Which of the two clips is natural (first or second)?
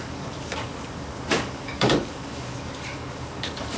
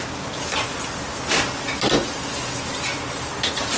second